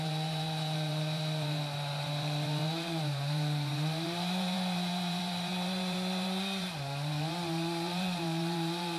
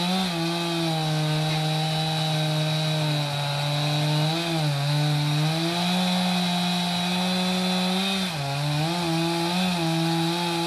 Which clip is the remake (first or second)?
first